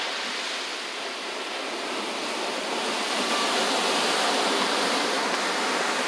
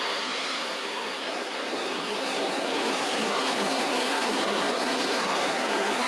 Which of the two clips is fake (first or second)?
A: second